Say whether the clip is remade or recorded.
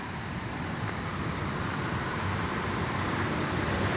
remade